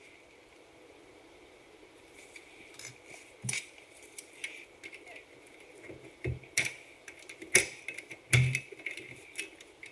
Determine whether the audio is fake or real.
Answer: real